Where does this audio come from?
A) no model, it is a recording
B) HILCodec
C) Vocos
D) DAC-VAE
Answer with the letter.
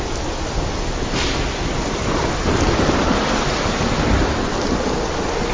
A